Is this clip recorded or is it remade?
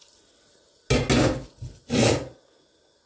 recorded